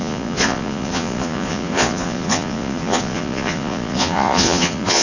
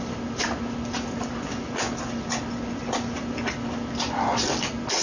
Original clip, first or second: second